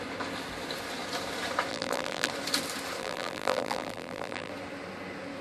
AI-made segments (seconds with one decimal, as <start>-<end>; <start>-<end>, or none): 1.7-2.3; 3.0-4.5